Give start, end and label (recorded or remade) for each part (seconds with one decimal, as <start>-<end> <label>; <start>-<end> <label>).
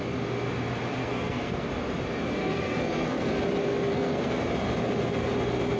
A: 0.0-1.0 recorded; 1.0-1.7 remade; 1.7-2.4 recorded; 2.4-3.3 remade; 3.3-3.9 recorded; 3.9-4.4 remade; 4.4-5.8 recorded